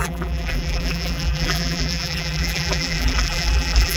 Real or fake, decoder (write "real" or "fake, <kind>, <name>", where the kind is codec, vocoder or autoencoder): fake, vocoder, BigVGAN v2